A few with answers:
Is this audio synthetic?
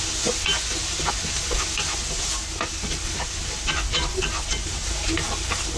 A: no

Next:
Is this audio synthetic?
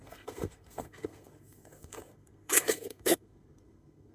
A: yes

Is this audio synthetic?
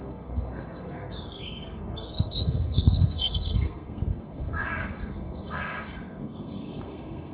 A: yes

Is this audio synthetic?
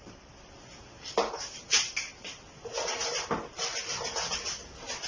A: no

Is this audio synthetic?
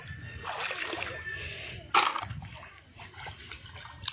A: no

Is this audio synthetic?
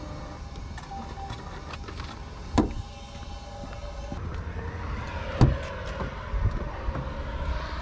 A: no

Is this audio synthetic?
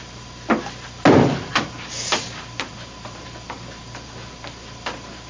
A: no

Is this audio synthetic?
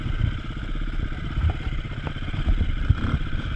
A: no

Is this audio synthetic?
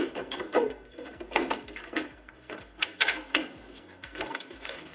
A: yes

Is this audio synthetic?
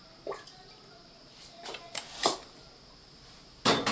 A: no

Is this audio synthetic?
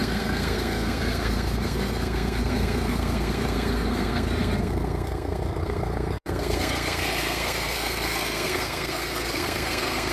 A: yes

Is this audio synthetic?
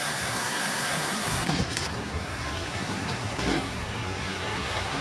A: yes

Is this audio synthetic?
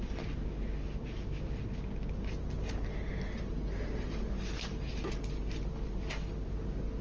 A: no